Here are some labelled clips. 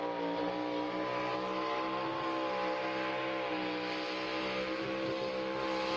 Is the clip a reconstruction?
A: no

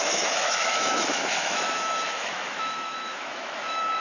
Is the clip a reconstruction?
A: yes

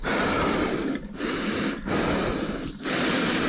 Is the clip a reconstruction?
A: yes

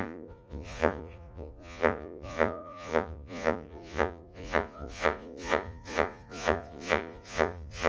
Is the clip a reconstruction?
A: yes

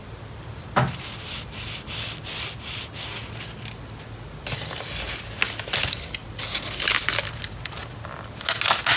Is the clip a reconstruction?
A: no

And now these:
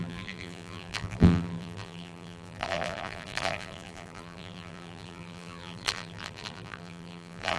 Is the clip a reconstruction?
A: yes